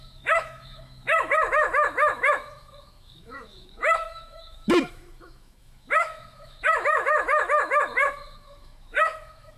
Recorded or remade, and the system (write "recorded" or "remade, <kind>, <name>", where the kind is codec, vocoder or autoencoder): remade, autoencoder, DAC-VAE